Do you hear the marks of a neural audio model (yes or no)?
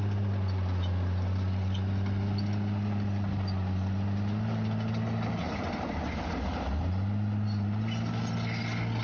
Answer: no